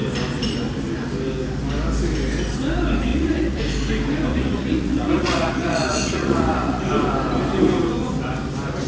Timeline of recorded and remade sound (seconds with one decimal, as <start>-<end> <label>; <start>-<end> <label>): 0.0-3.1 recorded; 3.1-3.6 remade; 3.6-4.3 recorded; 4.3-6.8 remade; 6.8-8.9 recorded